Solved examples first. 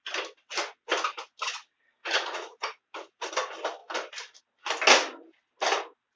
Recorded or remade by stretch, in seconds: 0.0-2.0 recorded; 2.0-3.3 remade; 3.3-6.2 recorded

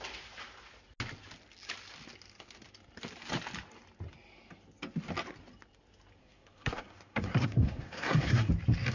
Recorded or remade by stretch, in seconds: 0.0-6.2 recorded; 6.2-8.5 remade; 8.5-8.9 recorded

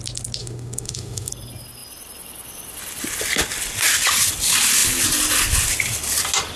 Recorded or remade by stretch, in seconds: 0.0-0.4 recorded; 0.4-1.3 remade; 1.3-6.6 recorded

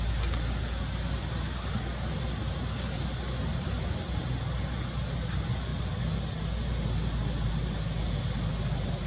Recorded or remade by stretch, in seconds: 0.0-9.1 recorded

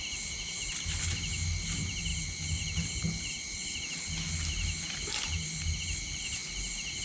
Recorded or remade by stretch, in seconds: 0.0-7.0 recorded

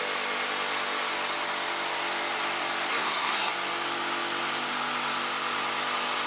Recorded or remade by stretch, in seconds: 0.0-2.9 recorded; 2.9-3.5 remade; 3.5-6.3 recorded